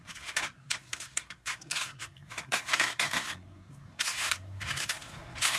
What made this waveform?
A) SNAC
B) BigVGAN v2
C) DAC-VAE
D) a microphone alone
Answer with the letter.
A